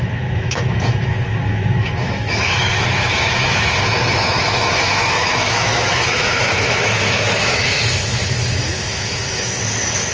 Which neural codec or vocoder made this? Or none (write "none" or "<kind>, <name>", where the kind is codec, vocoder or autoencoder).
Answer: autoencoder, DAC-VAE